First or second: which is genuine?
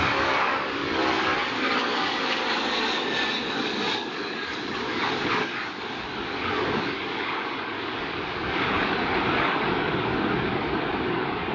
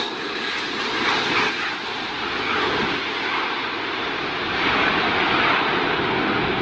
second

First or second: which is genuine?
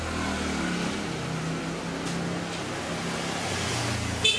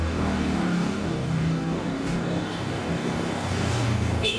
first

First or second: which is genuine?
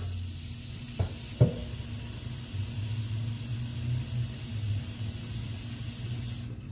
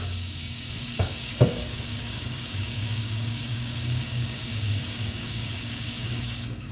first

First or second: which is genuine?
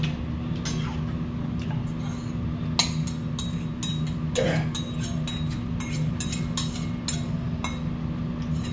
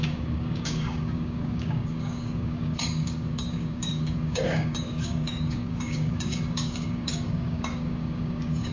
first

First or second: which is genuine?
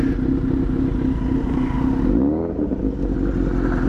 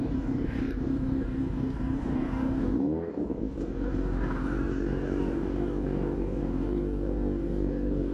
first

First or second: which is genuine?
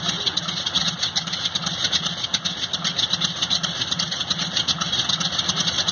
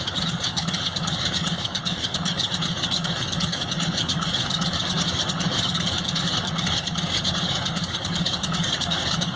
first